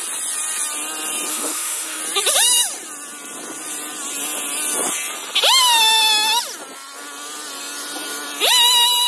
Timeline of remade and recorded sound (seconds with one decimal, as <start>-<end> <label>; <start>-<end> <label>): 0.0-1.3 recorded; 1.3-2.0 remade; 2.0-9.1 recorded